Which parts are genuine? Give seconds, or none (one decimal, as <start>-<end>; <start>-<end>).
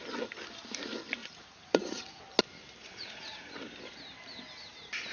0.0-1.2; 2.2-2.8; 3.6-5.1